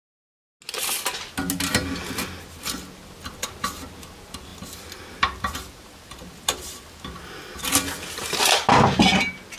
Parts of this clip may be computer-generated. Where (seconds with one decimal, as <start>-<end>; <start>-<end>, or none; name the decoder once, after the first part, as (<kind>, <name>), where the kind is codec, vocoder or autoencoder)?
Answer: 4.5-7.4 (vocoder, BigVGAN v2)